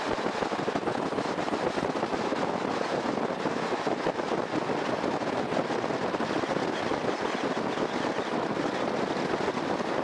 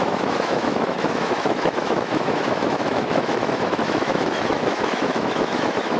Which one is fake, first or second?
second